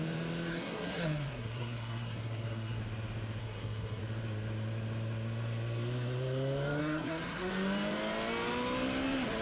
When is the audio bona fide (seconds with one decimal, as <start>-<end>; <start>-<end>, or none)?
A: 0.0-0.5; 2.8-3.4; 4.0-6.8; 7.5-9.4